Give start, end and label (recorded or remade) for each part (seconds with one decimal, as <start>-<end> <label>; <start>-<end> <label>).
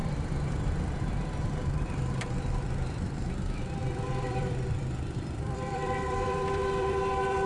0.0-7.5 remade